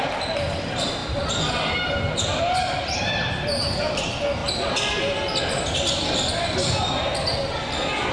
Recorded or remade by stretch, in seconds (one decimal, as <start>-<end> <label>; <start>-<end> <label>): 0.0-8.1 recorded